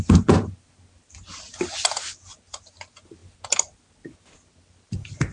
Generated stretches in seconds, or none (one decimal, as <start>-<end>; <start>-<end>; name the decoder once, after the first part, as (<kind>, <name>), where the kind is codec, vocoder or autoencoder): none